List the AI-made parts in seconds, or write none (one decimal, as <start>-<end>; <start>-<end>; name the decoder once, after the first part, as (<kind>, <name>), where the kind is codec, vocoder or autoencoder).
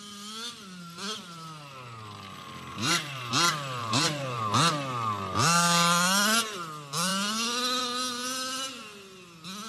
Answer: 2.7-3.3 (vocoder, BigVGAN v2); 3.8-4.4